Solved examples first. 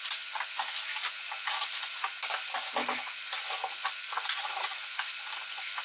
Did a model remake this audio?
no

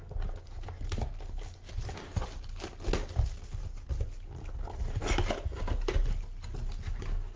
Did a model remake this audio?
no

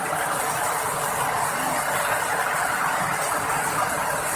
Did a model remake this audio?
no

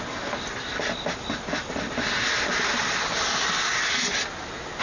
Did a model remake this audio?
no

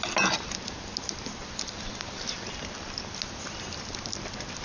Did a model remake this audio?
no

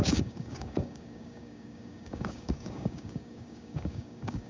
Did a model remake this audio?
yes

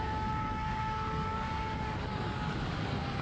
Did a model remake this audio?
yes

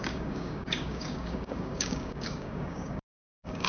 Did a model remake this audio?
yes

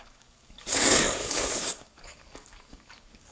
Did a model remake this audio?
yes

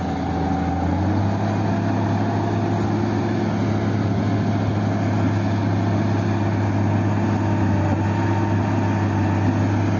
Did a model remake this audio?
no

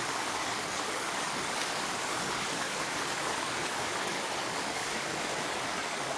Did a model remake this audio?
yes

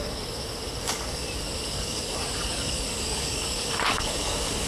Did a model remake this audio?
yes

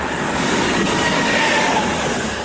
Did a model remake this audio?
yes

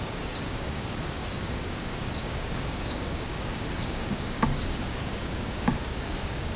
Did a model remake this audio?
yes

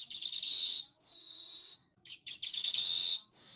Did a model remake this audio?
yes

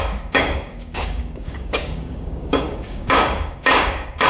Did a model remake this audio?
yes